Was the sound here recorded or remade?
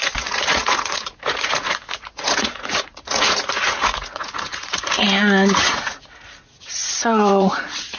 remade